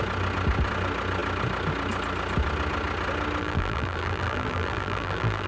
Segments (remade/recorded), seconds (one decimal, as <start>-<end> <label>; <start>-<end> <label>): 0.0-3.4 recorded; 3.4-5.5 remade